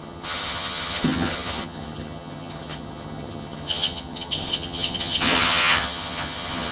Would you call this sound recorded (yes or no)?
no